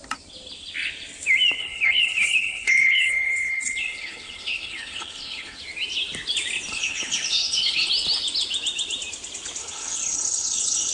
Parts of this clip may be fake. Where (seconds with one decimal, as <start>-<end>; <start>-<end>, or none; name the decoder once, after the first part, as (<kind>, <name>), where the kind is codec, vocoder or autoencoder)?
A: 1.6-5.6 (codec, HILCodec); 6.7-7.9; 9.6-10.9